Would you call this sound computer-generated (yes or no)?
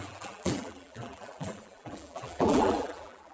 yes